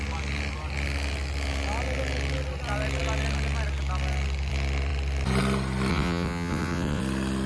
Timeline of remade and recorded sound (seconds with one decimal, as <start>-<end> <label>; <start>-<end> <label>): 0.0-5.9 recorded; 5.9-7.0 remade; 7.0-7.5 recorded